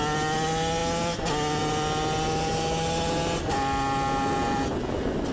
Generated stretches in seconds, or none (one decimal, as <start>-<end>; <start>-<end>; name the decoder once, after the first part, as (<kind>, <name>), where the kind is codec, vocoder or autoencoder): none